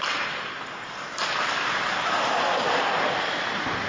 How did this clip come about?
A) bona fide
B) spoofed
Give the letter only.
A